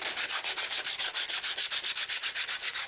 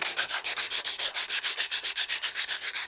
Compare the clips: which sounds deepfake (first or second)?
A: second